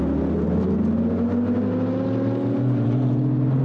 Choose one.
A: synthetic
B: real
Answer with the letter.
B